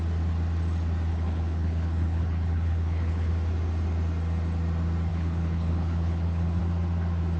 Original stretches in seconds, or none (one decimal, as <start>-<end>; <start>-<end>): 0.0-1.1; 3.3-5.1; 6.6-7.4